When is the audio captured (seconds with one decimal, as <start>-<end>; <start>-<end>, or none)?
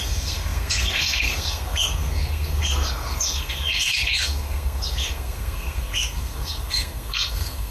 none